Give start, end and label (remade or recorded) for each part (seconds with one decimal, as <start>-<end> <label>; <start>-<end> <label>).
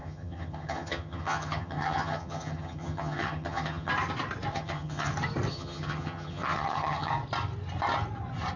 0.0-3.9 remade; 3.9-4.5 recorded; 4.5-5.1 remade; 5.1-5.5 recorded; 5.5-7.1 remade; 7.1-8.6 recorded